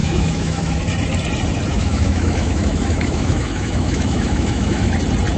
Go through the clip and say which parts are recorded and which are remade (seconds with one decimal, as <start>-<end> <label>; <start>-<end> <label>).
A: 0.0-0.8 remade; 0.8-1.7 recorded; 1.7-4.9 remade; 4.9-5.4 recorded